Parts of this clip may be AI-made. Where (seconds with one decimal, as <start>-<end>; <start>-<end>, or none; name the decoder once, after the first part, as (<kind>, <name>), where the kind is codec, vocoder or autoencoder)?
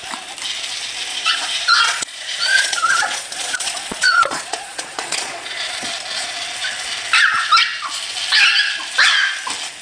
1.1-5.9 (vocoder, Vocos)